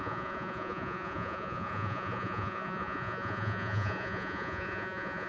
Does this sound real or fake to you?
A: fake